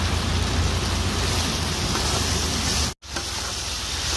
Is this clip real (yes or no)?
yes